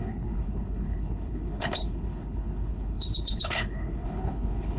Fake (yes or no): yes